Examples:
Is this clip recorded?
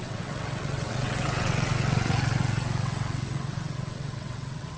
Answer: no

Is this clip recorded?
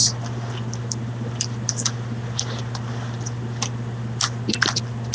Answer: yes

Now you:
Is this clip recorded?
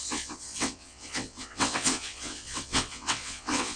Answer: no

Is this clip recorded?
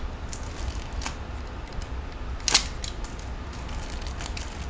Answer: yes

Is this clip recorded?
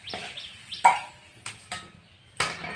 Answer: yes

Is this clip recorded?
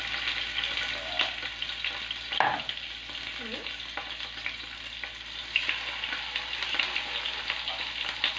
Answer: yes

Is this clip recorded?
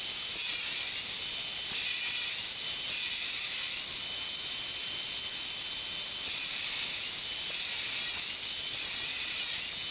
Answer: yes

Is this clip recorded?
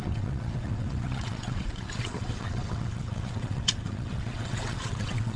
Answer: no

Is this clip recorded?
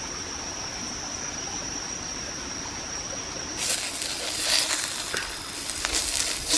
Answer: yes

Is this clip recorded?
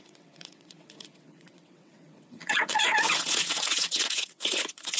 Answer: no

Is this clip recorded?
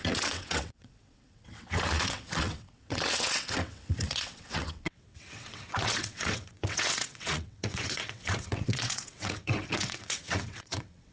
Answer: no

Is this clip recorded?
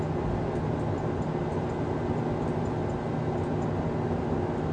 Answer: yes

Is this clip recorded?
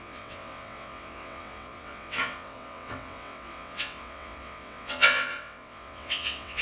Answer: no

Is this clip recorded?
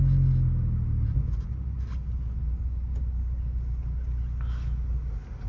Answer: yes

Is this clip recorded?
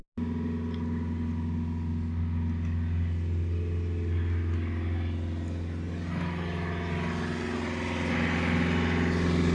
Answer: yes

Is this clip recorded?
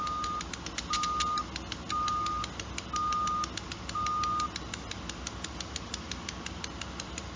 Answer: yes